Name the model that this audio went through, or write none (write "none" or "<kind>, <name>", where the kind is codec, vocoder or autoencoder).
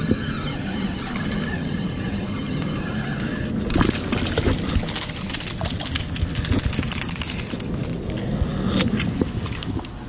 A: none